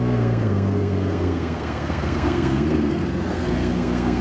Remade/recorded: remade